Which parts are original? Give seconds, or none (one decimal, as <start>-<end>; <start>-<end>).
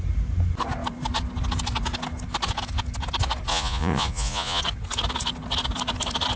0.0-3.5; 4.6-6.4